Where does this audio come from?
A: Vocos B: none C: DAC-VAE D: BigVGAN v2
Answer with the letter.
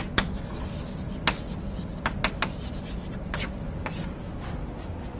B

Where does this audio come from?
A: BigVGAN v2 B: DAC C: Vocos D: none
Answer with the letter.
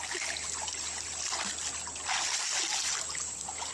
D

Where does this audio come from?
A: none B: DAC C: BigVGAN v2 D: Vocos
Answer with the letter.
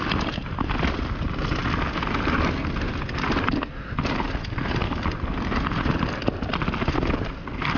A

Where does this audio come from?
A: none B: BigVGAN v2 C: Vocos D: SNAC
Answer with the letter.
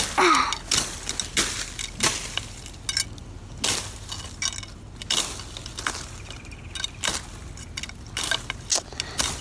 A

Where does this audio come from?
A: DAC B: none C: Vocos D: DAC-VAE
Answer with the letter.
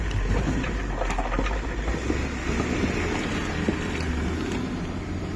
B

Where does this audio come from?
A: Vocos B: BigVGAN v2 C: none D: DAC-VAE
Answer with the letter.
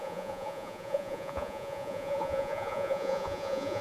A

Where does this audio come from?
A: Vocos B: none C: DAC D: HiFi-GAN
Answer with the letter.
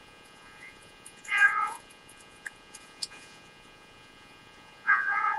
A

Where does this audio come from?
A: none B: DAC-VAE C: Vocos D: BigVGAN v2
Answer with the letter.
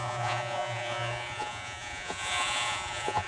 C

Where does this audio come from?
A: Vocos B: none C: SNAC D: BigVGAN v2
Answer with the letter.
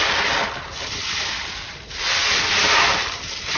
B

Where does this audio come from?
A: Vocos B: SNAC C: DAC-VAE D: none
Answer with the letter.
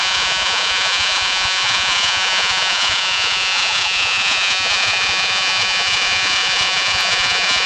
A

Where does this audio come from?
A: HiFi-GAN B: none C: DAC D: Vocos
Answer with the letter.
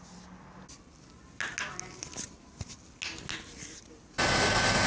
B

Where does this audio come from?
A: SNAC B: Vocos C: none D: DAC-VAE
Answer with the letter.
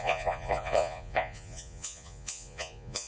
B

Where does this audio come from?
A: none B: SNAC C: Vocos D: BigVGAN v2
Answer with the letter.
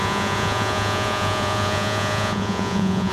C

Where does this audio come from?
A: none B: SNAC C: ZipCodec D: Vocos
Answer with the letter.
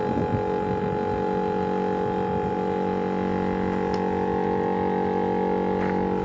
A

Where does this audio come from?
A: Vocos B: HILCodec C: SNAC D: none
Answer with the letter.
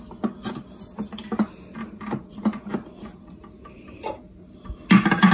D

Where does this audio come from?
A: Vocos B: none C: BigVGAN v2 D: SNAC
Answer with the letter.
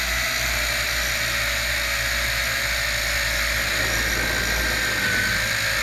B